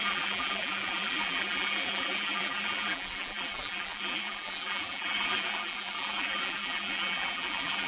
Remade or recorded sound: remade